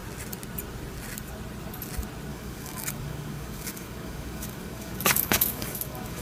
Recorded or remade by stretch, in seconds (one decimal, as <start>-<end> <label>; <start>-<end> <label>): 0.0-2.3 recorded; 2.3-6.2 remade

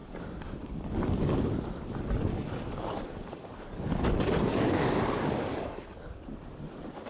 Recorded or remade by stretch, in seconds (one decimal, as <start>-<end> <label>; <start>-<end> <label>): 0.0-1.2 remade; 1.2-2.3 recorded; 2.3-5.8 remade; 5.8-7.1 recorded

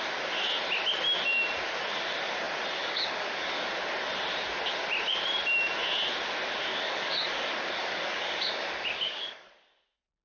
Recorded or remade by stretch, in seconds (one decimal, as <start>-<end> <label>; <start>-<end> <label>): 0.0-2.8 recorded; 2.8-3.7 remade; 3.7-6.7 recorded; 6.7-9.5 remade; 9.5-10.2 recorded

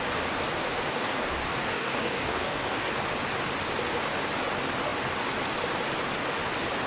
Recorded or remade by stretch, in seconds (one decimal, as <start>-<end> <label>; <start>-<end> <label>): 0.0-0.9 recorded; 0.9-2.9 remade; 2.9-6.9 recorded

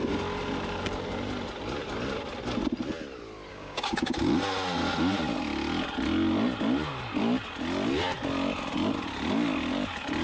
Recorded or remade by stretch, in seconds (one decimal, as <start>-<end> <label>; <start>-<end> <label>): 0.0-3.5 recorded; 3.5-4.1 remade; 4.1-10.2 recorded

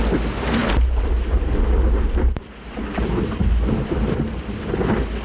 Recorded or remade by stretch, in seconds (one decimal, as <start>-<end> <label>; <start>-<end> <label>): 0.0-5.2 recorded

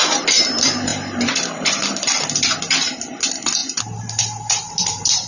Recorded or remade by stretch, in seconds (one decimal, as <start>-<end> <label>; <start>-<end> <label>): 0.0-5.3 recorded